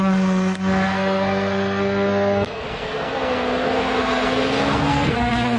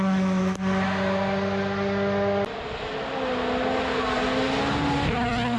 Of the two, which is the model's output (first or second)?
first